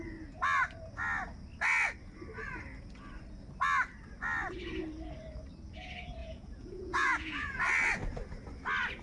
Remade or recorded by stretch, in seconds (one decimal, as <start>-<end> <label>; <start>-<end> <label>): 0.0-6.2 recorded; 6.2-7.6 remade; 7.6-9.0 recorded